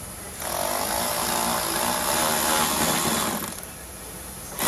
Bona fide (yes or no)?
yes